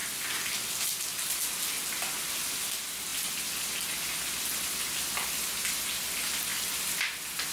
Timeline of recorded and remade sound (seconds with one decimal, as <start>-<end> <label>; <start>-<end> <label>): 0.0-7.5 recorded